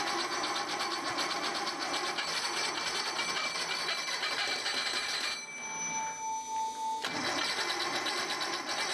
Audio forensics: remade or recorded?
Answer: recorded